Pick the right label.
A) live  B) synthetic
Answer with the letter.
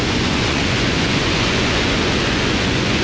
B